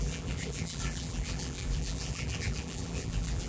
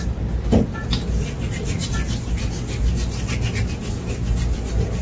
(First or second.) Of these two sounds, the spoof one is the first